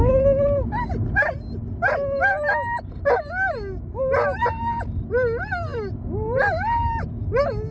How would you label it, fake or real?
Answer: real